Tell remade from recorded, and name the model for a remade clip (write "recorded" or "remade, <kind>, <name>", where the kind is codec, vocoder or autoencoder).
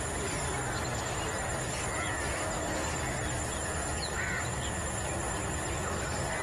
recorded